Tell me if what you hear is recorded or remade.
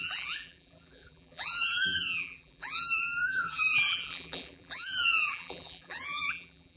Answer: remade